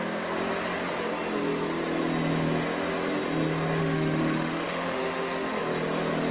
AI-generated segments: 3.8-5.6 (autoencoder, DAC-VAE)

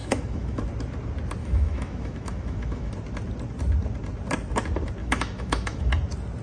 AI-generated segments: 0.0-0.6 (autoencoder, DAC-VAE); 1.4-2.9; 5.0-5.9